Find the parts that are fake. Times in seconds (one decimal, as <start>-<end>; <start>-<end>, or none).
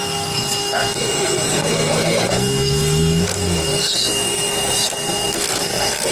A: 0.0-6.1